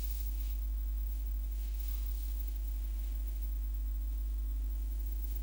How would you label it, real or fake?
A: fake